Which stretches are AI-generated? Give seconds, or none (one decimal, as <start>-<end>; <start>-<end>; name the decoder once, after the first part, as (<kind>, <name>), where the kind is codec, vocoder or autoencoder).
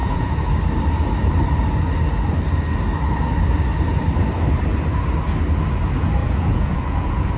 0.0-0.6 (vocoder, Vocos); 6.2-7.4